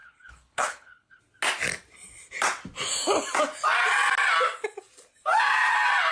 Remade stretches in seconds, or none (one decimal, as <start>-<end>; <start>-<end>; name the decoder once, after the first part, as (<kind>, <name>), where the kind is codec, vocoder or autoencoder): 0.0-1.2 (codec, HILCodec)